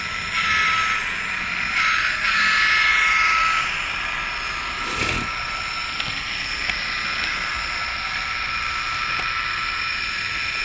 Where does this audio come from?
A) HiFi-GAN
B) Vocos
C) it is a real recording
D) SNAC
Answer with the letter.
C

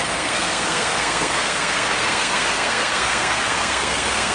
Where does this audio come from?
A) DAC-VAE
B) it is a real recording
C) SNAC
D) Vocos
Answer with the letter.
C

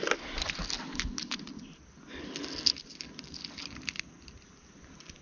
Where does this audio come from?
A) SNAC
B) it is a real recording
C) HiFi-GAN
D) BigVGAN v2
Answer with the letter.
B